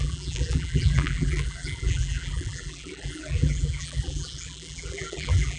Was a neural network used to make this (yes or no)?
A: yes